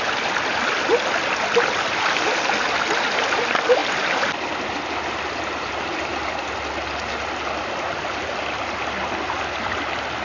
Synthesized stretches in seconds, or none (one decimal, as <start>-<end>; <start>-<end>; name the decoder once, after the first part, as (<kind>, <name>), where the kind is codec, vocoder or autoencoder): none